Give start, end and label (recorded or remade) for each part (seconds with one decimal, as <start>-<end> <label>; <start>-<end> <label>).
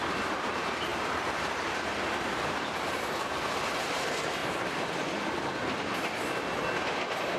0.0-0.9 recorded; 0.9-3.6 remade; 3.6-4.4 recorded; 4.4-5.2 remade; 5.2-7.4 recorded